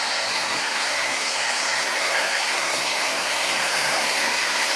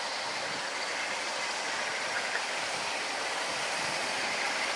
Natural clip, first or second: second